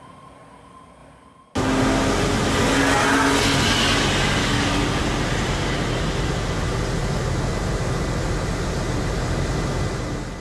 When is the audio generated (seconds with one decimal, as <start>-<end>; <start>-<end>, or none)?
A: 4.4-5.0